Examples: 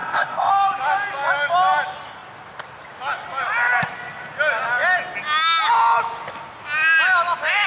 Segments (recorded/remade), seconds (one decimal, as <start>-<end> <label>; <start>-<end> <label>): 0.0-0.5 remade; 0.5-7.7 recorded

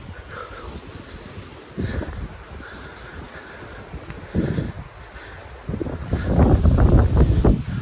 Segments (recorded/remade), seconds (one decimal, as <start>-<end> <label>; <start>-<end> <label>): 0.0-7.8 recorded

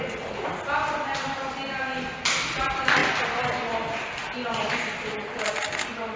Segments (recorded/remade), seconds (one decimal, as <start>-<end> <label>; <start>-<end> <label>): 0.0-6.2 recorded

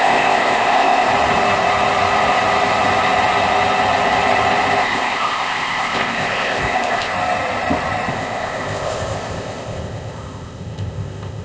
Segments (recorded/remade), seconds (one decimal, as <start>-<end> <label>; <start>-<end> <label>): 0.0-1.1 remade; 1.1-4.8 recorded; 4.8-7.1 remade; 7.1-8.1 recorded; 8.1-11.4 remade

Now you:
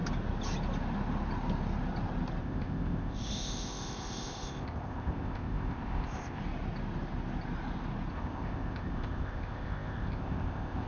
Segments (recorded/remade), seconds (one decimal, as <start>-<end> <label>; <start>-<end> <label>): 0.0-2.4 recorded; 2.4-6.4 remade; 6.4-8.1 recorded; 8.1-10.9 remade

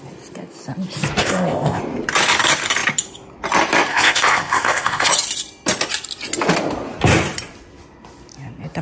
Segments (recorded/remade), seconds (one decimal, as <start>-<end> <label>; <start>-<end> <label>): 0.0-1.2 recorded; 1.2-1.8 remade; 1.8-3.9 recorded; 3.9-5.1 remade; 5.1-8.8 recorded